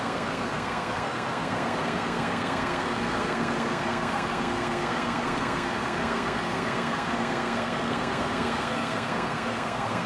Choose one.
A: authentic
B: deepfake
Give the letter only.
B